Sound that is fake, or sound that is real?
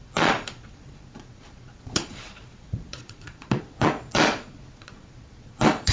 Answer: fake